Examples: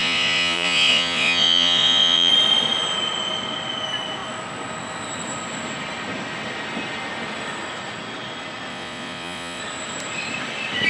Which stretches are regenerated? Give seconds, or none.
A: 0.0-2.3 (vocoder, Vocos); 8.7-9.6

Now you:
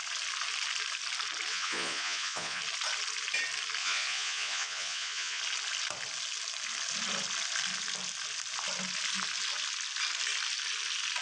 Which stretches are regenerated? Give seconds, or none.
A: 1.5-2.6 (vocoder, Vocos); 3.8-5.4

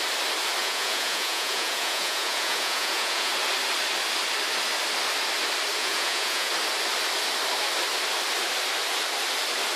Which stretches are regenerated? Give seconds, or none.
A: 0.6-3.3 (vocoder, Vocos); 5.8-6.5

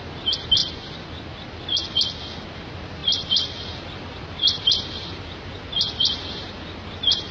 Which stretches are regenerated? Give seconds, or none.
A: none

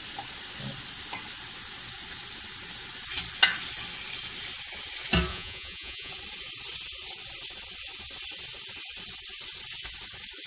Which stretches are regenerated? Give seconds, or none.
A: 5.3-6.1 (vocoder, Vocos)